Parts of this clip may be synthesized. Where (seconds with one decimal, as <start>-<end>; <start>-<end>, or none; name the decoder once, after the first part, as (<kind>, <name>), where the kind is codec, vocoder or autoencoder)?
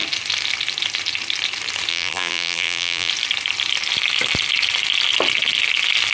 1.9-3.1 (vocoder, BigVGAN v2)